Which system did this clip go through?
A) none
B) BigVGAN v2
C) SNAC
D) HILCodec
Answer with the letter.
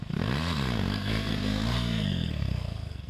C